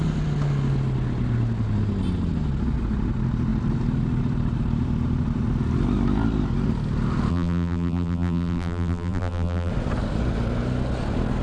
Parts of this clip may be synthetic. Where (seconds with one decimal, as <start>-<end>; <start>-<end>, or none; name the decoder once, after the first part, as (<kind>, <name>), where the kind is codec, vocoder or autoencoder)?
7.3-9.7 (vocoder, BigVGAN v2)